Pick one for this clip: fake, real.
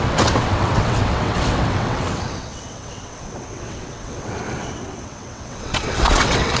fake